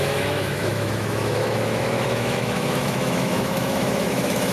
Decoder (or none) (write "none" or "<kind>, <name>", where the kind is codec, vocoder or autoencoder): autoencoder, DAC-VAE